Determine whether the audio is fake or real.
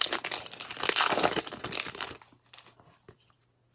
real